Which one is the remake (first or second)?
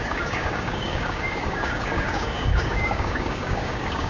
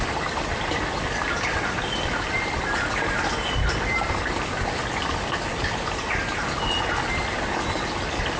first